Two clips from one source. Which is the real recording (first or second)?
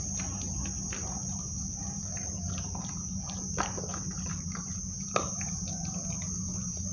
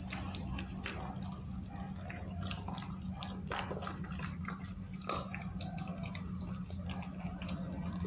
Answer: second